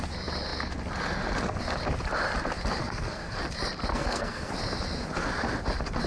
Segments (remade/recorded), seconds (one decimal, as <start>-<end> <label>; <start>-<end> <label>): 0.0-2.8 recorded; 2.8-3.4 remade; 3.4-3.9 recorded; 3.9-4.5 remade; 4.5-6.1 recorded